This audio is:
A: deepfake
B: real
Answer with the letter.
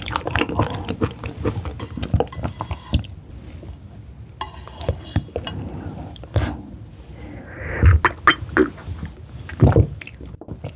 B